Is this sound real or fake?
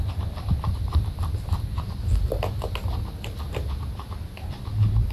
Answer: real